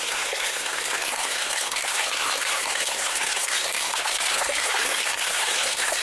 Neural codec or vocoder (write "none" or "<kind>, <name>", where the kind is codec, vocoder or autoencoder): codec, SNAC